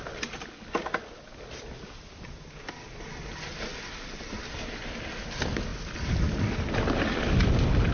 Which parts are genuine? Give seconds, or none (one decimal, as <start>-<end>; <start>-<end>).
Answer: 0.0-7.9